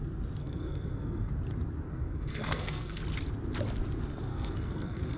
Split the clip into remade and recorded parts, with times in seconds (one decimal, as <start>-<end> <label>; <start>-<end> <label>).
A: 0.0-0.4 recorded; 0.4-1.3 remade; 1.3-1.9 recorded; 1.9-3.0 remade; 3.0-4.3 recorded; 4.3-5.2 remade